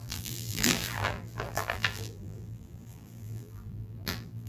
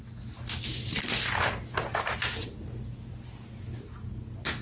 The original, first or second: second